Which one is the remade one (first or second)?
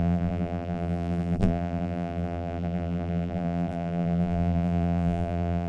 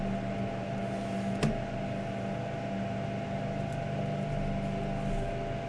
first